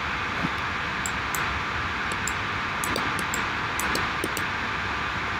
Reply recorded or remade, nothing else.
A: recorded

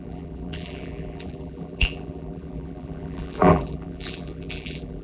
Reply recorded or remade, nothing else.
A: remade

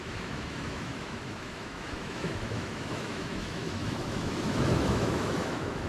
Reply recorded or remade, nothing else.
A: remade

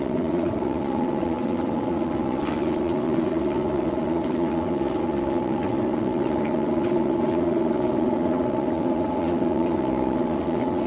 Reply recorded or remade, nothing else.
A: remade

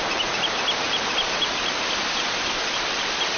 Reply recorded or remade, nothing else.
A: recorded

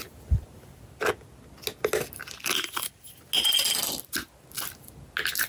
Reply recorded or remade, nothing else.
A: recorded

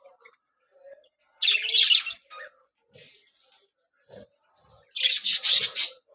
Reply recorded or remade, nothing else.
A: recorded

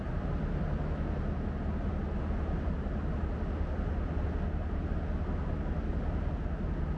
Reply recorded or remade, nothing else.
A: recorded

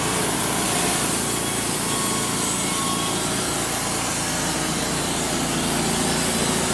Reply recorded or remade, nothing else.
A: recorded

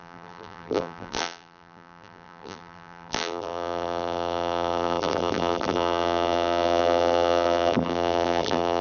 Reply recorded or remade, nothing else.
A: remade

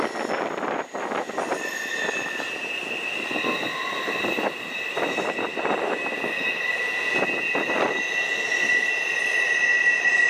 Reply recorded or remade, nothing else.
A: recorded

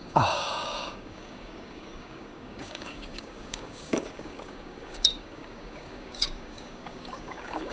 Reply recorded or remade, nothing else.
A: remade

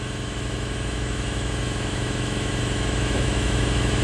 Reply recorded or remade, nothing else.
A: remade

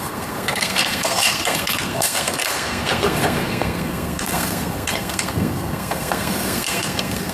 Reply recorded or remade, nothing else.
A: remade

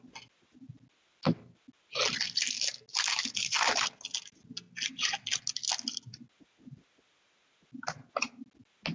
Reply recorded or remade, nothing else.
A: recorded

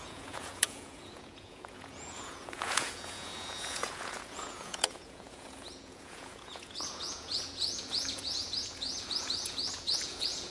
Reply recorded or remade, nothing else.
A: remade